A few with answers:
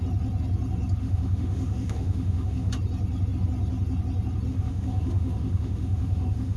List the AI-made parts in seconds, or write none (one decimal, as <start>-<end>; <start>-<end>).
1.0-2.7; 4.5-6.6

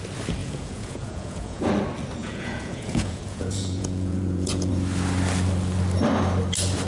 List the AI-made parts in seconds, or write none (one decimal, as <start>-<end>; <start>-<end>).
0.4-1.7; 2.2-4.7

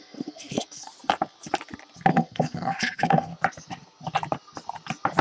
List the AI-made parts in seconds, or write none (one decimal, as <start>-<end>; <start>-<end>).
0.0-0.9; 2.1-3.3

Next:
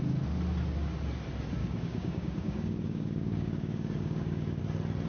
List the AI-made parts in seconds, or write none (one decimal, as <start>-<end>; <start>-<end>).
1.6-4.6

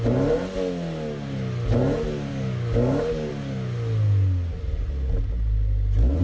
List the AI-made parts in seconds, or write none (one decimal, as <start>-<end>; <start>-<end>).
2.3-3.3